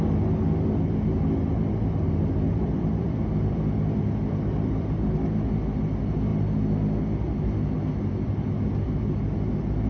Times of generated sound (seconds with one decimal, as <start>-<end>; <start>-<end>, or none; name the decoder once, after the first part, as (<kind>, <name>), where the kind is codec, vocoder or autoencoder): 2.5-5.5 (vocoder, BigVGAN v2)